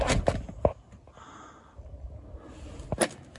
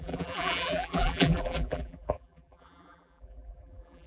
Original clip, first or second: first